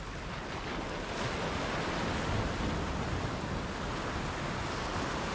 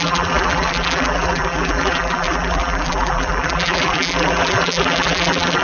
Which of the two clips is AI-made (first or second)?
second